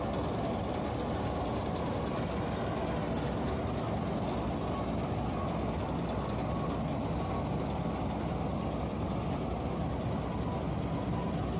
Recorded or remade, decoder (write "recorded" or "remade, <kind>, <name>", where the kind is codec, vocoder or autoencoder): recorded